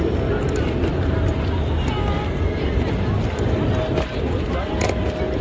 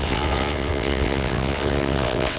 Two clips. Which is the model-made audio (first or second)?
second